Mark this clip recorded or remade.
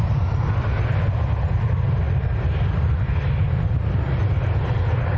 recorded